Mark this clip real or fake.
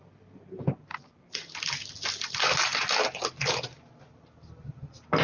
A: real